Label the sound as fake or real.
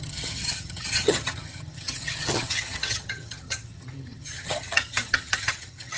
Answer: fake